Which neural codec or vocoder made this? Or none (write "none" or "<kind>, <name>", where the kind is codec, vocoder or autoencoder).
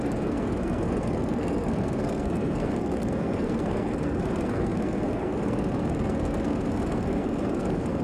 codec, SNAC